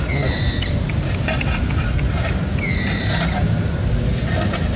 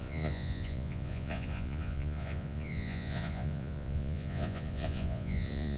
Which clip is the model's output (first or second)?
second